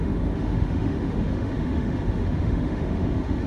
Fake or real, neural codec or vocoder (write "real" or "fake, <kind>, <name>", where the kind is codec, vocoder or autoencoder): fake, autoencoder, DAC-VAE